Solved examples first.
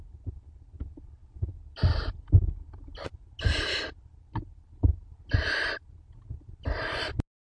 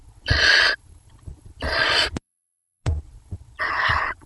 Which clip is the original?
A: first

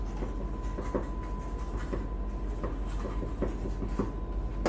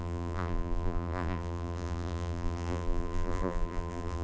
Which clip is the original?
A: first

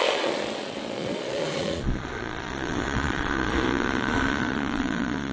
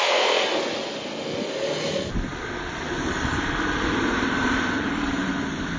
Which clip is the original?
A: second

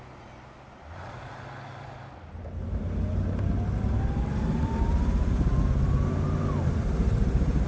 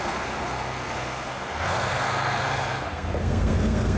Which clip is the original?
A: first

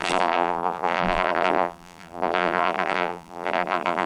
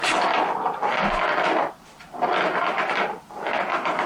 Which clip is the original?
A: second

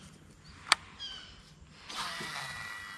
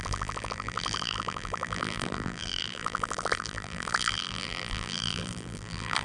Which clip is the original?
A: first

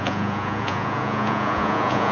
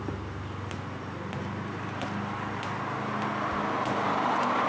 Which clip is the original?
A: second